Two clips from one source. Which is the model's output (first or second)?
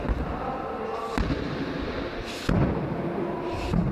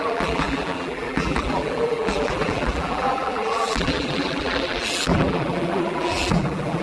second